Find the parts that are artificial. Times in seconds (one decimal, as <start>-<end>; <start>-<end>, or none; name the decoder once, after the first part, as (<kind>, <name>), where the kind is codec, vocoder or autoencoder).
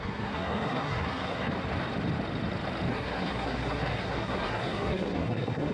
0.0-1.5 (codec, SNAC); 2.9-5.7